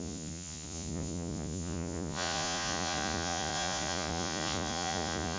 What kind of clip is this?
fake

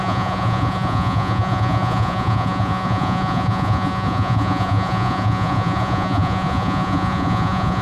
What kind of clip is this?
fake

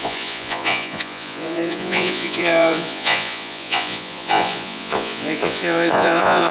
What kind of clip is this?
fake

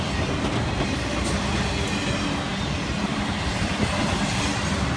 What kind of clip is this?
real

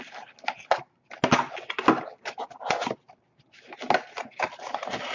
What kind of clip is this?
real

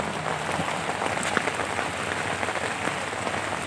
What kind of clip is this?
real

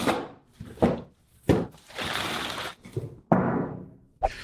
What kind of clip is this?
real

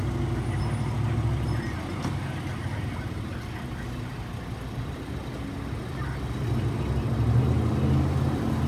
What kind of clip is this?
real